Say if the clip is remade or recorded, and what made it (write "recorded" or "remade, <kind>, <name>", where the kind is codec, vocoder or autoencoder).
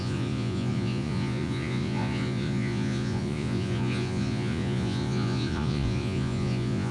remade, vocoder, Vocos